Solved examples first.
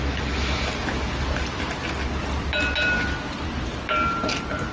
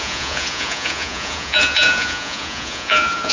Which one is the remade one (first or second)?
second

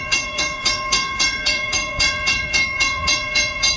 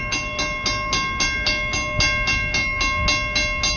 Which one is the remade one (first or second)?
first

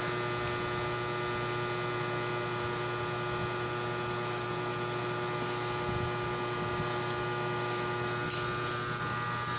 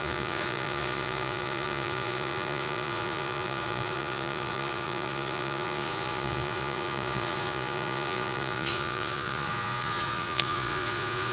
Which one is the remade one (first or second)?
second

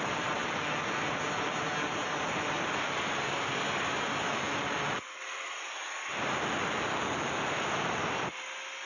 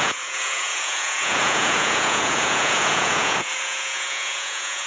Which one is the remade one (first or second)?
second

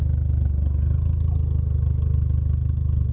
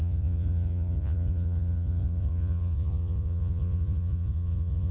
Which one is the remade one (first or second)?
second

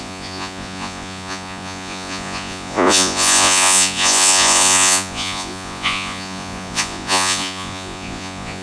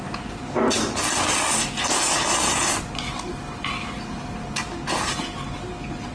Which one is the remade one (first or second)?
first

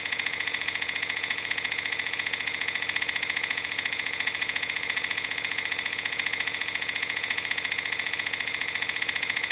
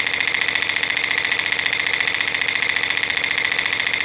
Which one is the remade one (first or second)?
first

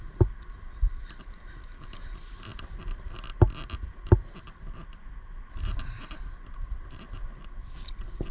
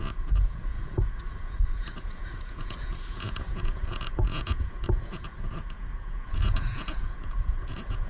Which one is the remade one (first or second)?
second